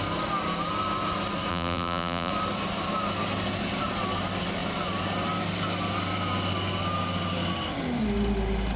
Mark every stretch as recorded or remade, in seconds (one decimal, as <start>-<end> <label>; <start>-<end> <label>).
0.0-1.5 recorded; 1.5-2.3 remade; 2.3-8.8 recorded